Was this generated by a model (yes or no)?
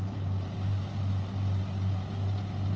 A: no